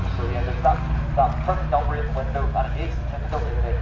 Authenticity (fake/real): real